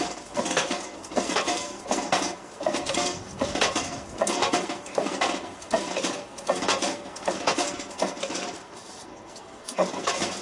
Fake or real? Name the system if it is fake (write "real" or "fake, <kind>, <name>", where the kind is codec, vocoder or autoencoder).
fake, codec, SNAC